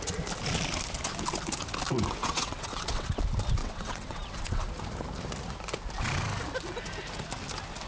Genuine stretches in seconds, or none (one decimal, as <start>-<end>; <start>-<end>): 0.0-2.2; 3.2-3.6; 4.7-7.9